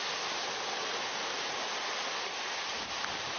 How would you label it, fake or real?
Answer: real